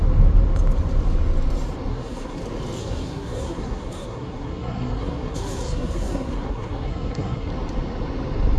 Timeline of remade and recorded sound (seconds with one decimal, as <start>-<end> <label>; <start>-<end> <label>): 0.0-1.9 recorded; 1.9-2.4 remade; 2.4-2.8 recorded; 2.8-7.5 remade; 7.5-8.6 recorded